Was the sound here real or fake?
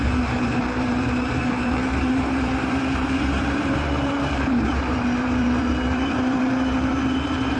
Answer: fake